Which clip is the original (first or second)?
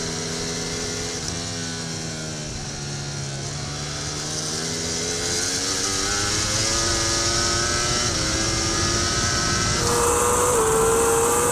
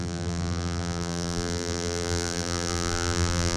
first